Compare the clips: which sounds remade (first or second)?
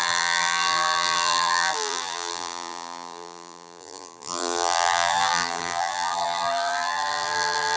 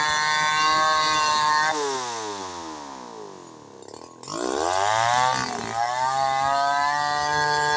first